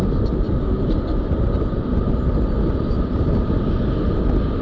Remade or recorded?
recorded